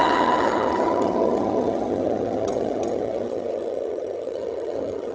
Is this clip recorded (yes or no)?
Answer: no